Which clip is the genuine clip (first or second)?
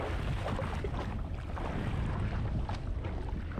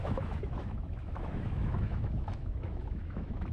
first